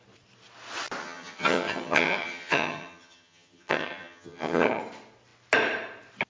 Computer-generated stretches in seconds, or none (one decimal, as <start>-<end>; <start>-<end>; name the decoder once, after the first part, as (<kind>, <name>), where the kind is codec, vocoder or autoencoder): 1.0-4.8 (vocoder, HiFi-GAN)